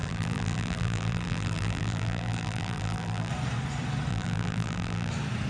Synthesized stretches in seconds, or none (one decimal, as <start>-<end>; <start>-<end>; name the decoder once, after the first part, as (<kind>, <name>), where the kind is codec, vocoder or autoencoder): 0.0-3.3 (vocoder, BigVGAN v2); 4.1-5.1